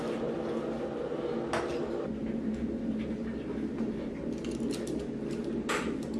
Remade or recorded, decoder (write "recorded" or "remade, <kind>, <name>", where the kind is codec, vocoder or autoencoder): recorded